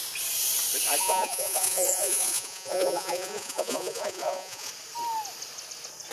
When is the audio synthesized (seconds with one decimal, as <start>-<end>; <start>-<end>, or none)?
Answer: 1.0-4.7